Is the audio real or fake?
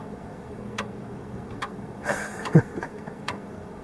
fake